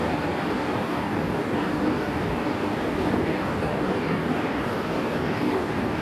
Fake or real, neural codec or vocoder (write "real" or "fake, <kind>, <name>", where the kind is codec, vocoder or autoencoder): fake, codec, DAC